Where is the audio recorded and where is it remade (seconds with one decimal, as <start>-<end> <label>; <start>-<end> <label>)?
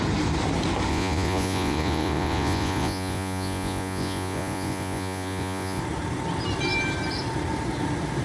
0.0-0.9 recorded; 0.9-5.8 remade; 5.8-8.2 recorded